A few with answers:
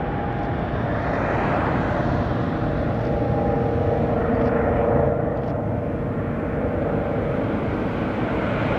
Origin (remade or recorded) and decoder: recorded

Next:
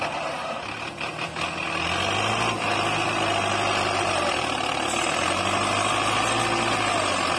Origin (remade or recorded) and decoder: recorded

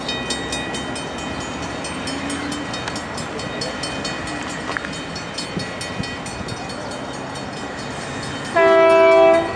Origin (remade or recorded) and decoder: recorded